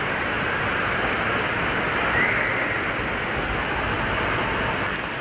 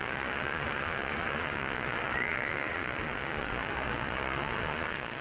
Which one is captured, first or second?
first